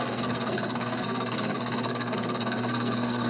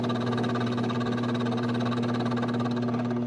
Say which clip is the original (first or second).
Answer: second